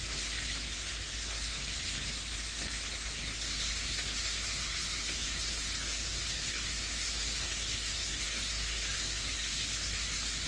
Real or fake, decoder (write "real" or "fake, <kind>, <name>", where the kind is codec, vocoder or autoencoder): fake, codec, SNAC